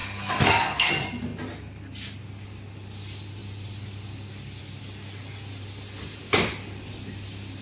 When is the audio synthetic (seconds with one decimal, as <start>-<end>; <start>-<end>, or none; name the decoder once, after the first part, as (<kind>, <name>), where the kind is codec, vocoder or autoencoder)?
0.0-0.9 (codec, SNAC)